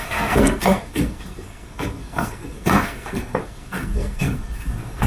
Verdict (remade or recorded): remade